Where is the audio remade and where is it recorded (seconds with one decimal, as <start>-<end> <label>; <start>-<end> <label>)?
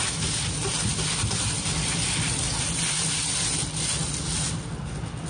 0.0-5.3 recorded